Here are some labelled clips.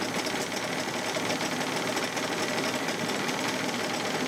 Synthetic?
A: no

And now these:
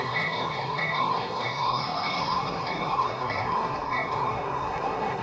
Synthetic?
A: yes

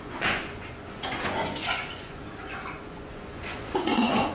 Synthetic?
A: yes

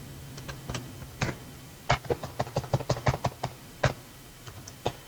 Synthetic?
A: no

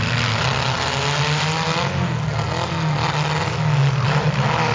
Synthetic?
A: no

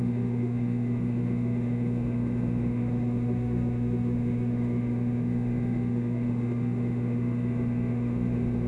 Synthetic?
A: yes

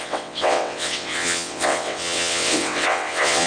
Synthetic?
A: yes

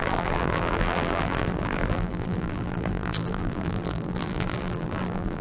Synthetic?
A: yes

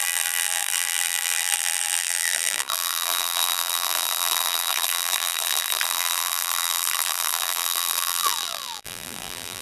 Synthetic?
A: yes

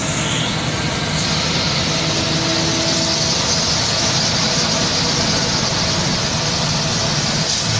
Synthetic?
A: no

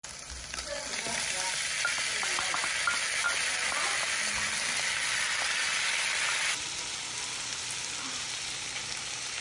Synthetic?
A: no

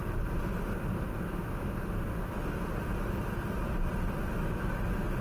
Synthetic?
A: no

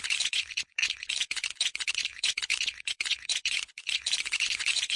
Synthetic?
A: yes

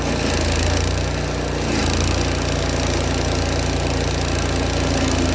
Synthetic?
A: no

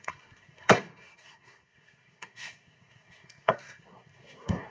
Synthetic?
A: yes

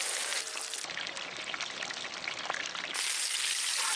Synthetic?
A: no